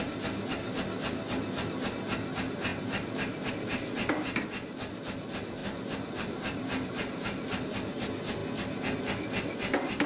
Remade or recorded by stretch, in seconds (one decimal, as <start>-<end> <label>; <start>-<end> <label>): 0.0-5.6 recorded; 5.6-7.7 remade; 7.7-10.1 recorded